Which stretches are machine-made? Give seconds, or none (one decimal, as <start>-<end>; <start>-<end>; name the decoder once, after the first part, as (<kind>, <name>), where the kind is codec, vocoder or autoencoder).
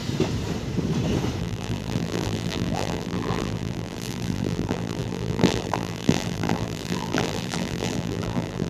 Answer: 1.4-8.7 (vocoder, BigVGAN v2)